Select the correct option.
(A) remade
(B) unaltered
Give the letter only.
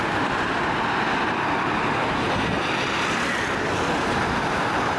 B